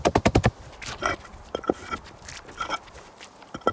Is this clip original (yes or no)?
yes